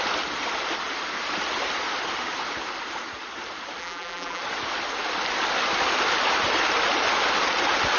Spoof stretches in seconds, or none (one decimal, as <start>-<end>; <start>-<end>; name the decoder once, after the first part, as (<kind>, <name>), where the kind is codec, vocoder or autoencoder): 3.8-4.4 (vocoder, BigVGAN v2)